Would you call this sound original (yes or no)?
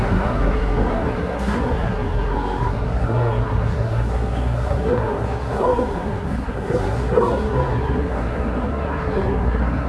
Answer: no